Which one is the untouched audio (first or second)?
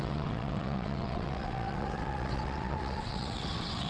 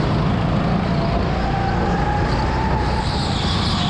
second